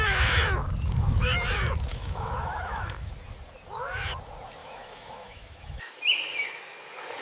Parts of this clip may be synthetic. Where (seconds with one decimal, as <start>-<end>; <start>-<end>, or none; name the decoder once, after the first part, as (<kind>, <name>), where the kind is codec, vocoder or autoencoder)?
1.9-3.1 (autoencoder, DAC-VAE); 4.6-5.9